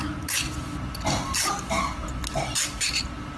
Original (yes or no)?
yes